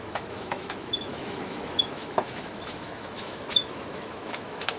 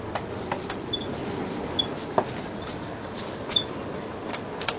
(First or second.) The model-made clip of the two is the first